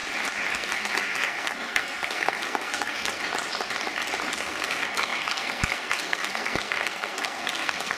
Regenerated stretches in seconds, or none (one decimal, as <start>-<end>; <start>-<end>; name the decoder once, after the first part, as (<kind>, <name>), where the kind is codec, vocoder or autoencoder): 0.5-3.2 (codec, SNAC); 4.3-8.0